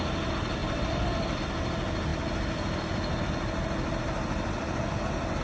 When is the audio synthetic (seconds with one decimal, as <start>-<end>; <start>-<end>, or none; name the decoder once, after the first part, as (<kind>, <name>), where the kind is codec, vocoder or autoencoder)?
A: 0.6-1.4 (vocoder, BigVGAN v2)